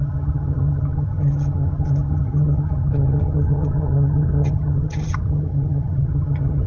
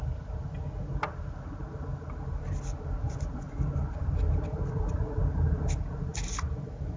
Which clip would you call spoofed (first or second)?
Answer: first